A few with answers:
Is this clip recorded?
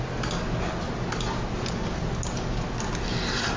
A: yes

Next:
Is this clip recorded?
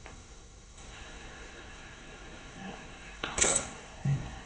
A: no